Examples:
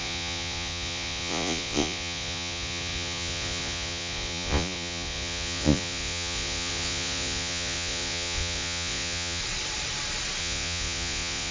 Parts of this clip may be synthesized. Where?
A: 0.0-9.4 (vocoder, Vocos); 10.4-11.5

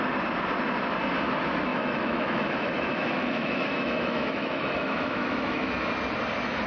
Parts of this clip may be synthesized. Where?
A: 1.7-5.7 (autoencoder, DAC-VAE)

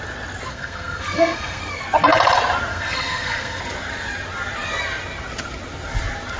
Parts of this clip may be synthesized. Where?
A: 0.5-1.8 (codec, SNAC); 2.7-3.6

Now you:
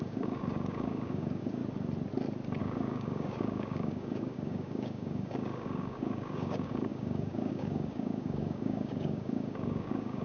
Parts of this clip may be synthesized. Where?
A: 0.0-1.6 (codec, DAC); 2.6-10.2

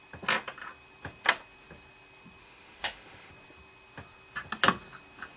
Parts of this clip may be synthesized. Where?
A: 2.4-3.3 (autoencoder, DAC-VAE)

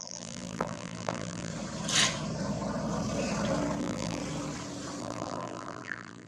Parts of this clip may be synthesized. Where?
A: 0.0-1.5 (vocoder, BigVGAN v2); 3.8-4.2; 5.0-6.3

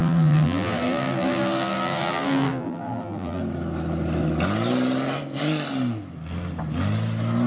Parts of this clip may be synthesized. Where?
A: 0.0-3.4 (vocoder, BigVGAN v2)